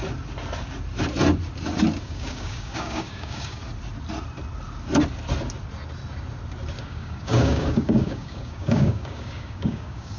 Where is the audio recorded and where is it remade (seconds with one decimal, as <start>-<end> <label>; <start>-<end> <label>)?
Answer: 0.0-2.0 recorded; 2.0-3.6 remade; 3.6-6.8 recorded; 6.8-10.2 remade